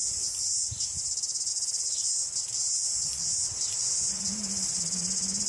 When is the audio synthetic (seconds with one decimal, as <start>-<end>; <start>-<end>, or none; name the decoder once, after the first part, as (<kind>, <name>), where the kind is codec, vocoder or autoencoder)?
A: none